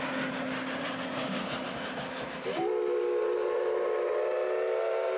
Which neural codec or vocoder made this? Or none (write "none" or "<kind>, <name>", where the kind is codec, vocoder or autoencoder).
none